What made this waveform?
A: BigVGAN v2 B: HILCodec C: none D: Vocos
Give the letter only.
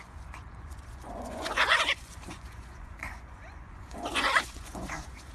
D